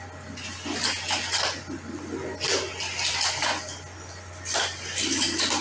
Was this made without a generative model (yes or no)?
yes